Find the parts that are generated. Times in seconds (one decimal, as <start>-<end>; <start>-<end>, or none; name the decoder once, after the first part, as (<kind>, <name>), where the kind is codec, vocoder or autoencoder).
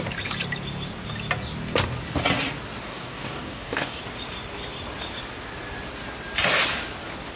2.9-4.0 (codec, DAC)